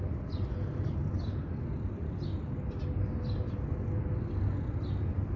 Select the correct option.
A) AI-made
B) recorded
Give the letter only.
B